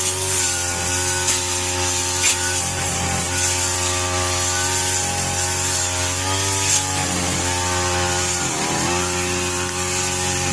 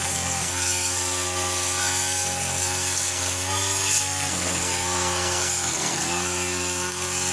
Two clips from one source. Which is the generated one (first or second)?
second